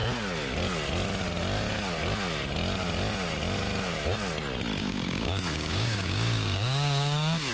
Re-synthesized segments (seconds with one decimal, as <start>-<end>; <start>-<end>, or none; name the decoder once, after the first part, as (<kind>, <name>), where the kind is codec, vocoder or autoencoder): 4.8-7.5 (codec, DAC)